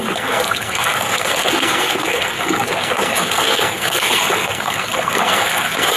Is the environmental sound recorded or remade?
remade